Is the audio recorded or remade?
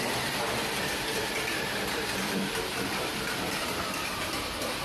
remade